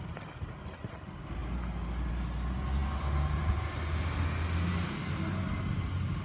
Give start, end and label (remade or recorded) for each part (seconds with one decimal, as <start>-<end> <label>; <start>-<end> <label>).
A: 0.0-6.2 recorded